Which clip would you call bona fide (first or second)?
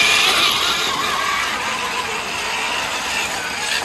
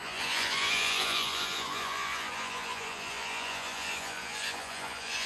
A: first